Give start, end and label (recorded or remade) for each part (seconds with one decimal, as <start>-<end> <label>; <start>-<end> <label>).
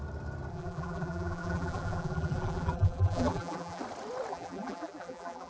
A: 0.0-0.5 recorded; 0.5-3.8 remade; 3.8-4.3 recorded; 4.3-5.5 remade